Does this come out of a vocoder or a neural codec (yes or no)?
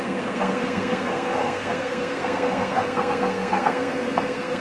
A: yes